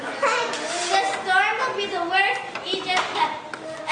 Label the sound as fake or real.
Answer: real